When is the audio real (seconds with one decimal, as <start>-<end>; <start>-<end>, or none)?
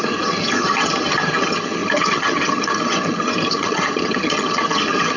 none